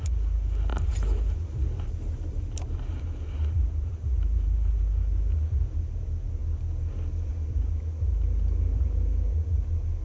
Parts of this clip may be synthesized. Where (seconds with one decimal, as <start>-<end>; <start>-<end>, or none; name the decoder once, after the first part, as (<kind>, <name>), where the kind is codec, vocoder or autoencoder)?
0.7-4.7 (vocoder, BigVGAN v2)